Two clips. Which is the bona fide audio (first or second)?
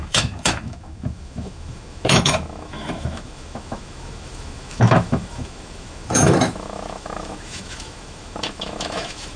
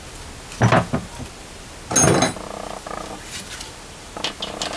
second